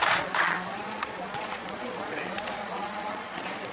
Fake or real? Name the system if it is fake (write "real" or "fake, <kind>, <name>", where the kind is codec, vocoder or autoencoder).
fake, vocoder, Vocos